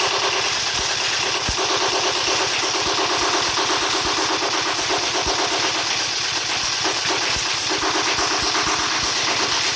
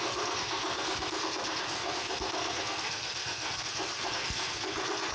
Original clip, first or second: first